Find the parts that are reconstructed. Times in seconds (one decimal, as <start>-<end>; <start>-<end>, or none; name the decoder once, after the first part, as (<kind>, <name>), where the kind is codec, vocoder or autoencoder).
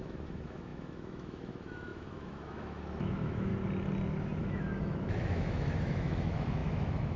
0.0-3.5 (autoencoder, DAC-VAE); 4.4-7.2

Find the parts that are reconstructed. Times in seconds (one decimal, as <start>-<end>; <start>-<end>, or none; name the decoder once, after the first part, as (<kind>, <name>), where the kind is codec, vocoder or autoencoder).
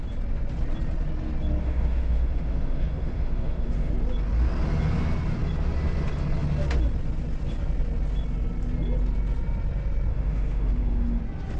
1.6-3.9 (autoencoder, DAC-VAE); 10.1-11.2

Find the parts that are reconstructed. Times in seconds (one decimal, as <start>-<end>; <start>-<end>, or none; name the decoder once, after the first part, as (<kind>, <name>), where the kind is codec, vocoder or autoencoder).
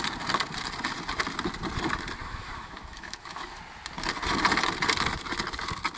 2.2-3.6 (autoencoder, DAC-VAE)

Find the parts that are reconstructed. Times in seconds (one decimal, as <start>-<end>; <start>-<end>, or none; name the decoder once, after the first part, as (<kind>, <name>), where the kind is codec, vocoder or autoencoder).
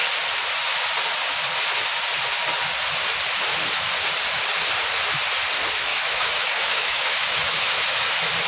5.9-8.1 (autoencoder, DAC-VAE)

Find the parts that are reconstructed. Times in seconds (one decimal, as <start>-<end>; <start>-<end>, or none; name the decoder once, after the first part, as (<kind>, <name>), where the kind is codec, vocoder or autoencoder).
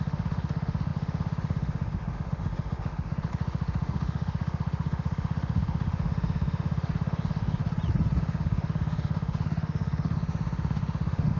0.0-7.6 (autoencoder, DAC-VAE); 8.2-11.4